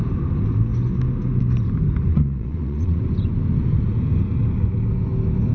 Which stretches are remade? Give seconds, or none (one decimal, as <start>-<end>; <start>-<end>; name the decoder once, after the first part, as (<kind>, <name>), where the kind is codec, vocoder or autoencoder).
2.1-3.0 (vocoder, Vocos)